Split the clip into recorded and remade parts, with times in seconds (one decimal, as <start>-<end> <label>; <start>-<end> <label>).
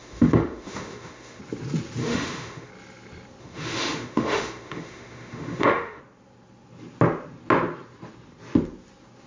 0.0-1.4 remade; 1.4-2.0 recorded; 2.0-2.7 remade; 2.7-3.4 recorded; 3.4-6.0 remade; 6.0-9.3 recorded